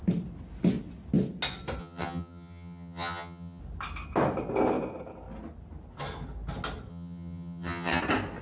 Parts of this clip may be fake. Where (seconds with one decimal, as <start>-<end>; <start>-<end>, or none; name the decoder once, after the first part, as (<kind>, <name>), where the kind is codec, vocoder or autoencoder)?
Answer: 1.8-3.6 (vocoder, HiFi-GAN); 6.9-8.0